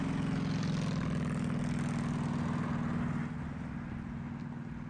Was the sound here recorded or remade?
recorded